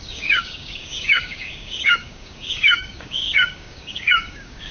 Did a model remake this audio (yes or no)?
yes